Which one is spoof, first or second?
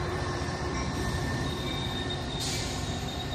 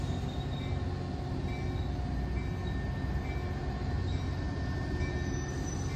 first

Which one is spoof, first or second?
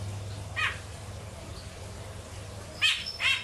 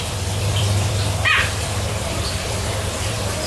second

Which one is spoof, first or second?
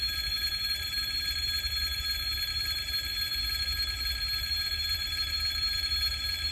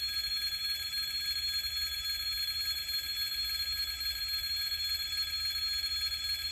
first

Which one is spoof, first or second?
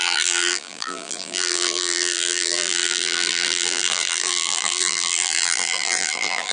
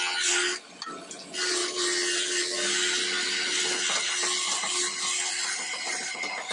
first